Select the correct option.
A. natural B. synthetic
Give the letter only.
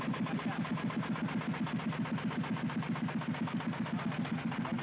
A